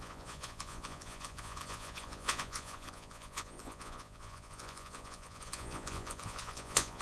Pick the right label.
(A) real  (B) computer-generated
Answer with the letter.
B